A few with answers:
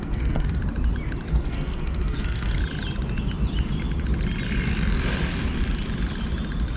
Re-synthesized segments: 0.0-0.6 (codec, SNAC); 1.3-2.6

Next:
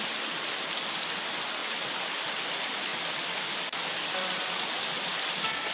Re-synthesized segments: 1.6-2.4 (vocoder, BigVGAN v2); 2.9-5.7

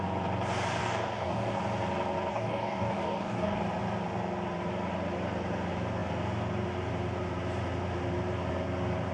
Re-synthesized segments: 0.8-1.6 (codec, DAC); 2.3-3.6

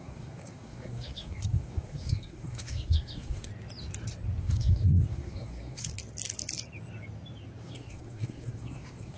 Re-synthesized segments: 0.0-3.5 (codec, SNAC); 4.4-5.9; 7.6-9.2

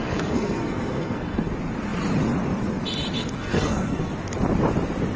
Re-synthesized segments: 0.0-1.5 (codec, SNAC); 3.2-4.1

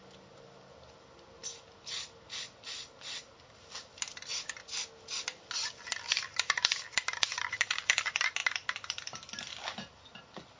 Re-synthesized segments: none